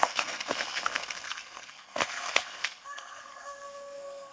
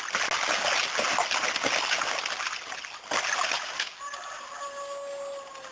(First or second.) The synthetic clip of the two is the first